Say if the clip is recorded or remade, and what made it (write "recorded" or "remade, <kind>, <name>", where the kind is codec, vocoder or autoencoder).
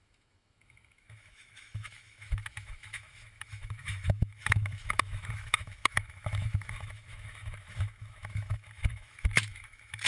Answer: remade, autoencoder, DAC-VAE